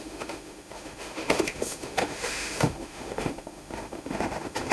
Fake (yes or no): yes